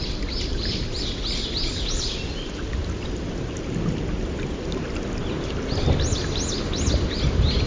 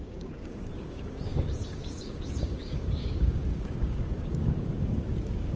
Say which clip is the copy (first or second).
second